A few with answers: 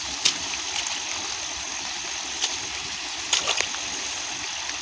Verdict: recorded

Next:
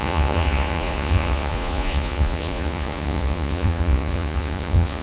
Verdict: remade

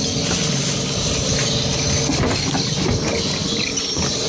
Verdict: recorded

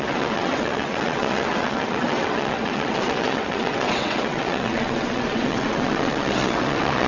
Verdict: remade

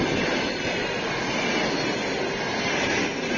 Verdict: recorded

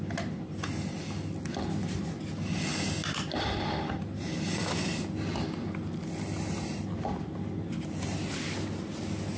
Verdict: recorded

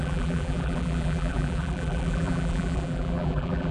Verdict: remade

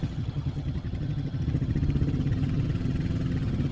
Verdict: remade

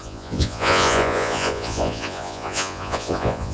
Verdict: remade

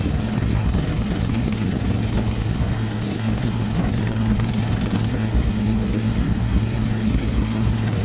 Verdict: remade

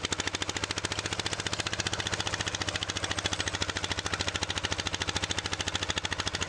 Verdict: recorded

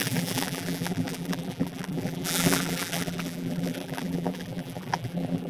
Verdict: remade